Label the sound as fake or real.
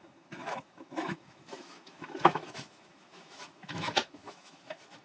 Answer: fake